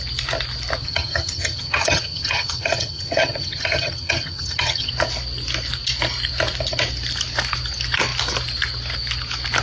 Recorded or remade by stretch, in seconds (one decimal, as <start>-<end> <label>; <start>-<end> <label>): 0.0-0.8 recorded; 0.8-4.9 remade; 4.9-9.6 recorded